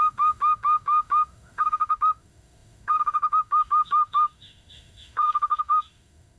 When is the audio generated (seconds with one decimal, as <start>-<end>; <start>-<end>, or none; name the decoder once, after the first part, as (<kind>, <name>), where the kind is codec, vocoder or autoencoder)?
0.0-6.4 (autoencoder, DAC-VAE)